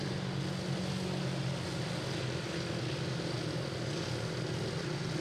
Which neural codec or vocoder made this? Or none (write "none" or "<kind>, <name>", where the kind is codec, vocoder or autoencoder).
none